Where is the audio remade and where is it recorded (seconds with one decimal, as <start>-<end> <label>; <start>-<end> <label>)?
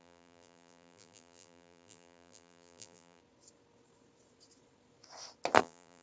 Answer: 0.0-3.2 remade; 3.2-5.6 recorded; 5.6-6.0 remade